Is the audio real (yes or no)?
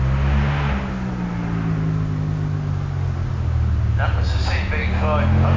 yes